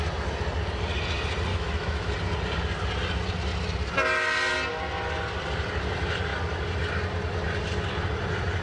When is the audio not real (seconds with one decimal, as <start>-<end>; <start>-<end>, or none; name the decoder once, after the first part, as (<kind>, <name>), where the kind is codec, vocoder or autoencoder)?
1.5-2.1 (autoencoder, DAC-VAE)